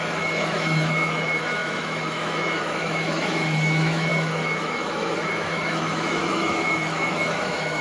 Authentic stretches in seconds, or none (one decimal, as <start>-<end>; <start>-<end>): none

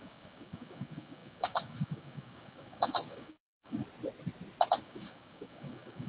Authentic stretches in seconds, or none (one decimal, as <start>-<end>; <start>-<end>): 3.8-4.8

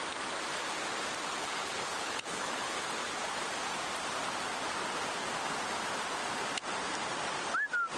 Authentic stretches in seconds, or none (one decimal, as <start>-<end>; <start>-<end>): 0.0-1.4; 2.8-8.0

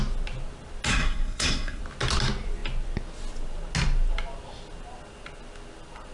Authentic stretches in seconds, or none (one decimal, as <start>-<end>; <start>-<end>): 0.0-0.9; 1.8-6.1

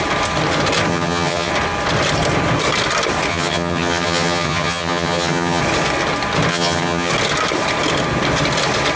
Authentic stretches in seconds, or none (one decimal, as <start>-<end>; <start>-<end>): 0.0-0.9; 1.5-3.3; 5.6-6.5; 7.1-9.0

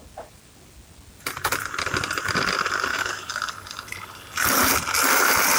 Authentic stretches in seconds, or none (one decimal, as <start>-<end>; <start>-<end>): 0.0-2.9; 3.4-5.6